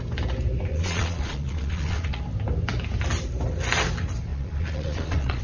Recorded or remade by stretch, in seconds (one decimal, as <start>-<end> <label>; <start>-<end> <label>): 0.0-0.7 recorded; 0.7-2.2 remade; 2.2-4.3 recorded; 4.3-5.4 remade